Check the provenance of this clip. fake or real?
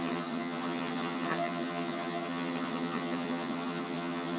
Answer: fake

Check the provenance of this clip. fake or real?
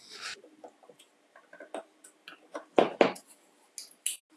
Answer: real